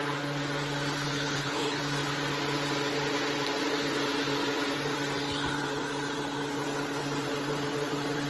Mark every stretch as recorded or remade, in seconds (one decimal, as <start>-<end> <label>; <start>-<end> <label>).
0.0-1.1 recorded; 1.1-1.8 remade; 1.8-8.3 recorded